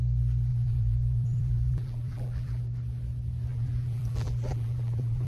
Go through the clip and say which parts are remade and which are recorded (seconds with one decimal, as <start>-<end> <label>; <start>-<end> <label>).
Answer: 0.0-0.5 recorded; 0.5-2.6 remade; 2.6-3.5 recorded; 3.5-5.3 remade